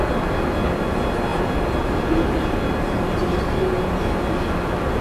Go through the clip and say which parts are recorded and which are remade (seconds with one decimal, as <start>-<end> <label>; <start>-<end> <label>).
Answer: 0.0-1.3 recorded; 1.3-4.3 remade; 4.3-5.0 recorded